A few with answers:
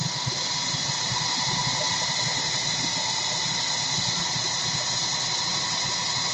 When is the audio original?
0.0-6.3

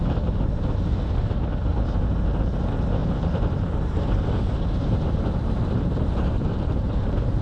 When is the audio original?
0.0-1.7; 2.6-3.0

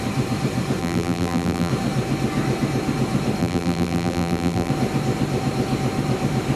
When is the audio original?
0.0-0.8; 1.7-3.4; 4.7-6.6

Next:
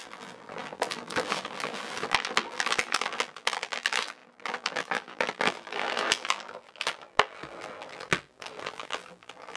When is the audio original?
none

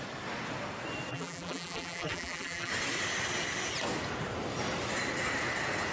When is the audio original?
0.0-1.1; 2.7-5.9

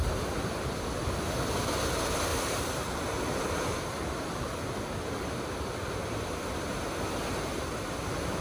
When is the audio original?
0.0-2.3; 4.9-8.4